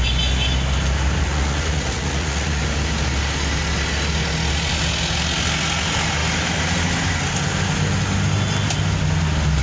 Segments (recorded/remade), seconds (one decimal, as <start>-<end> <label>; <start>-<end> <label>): 0.0-1.2 recorded; 1.2-2.6 remade; 2.6-9.6 recorded